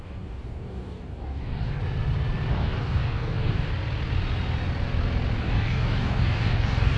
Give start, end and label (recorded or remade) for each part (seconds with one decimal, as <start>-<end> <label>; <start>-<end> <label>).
0.0-1.8 remade; 1.8-2.5 recorded; 2.5-3.7 remade; 3.7-5.4 recorded; 5.4-7.0 remade